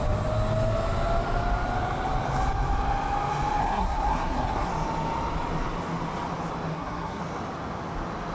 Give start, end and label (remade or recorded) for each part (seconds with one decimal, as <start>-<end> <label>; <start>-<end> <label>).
0.0-3.6 recorded; 3.6-4.7 remade; 4.7-6.7 recorded; 6.7-7.2 remade; 7.2-8.3 recorded